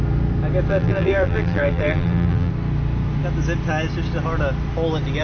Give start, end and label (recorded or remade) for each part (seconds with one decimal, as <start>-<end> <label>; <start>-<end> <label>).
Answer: 0.0-0.7 recorded; 0.7-2.5 remade; 2.5-5.2 recorded